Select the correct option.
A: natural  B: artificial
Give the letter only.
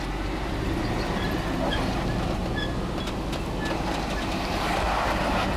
A